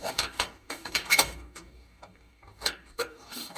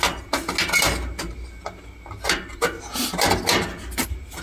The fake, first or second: first